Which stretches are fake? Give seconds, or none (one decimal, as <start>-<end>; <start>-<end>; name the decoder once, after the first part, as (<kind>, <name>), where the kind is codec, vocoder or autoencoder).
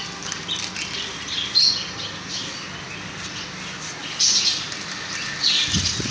none